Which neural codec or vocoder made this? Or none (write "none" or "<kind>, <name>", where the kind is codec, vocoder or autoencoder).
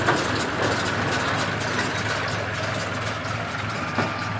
none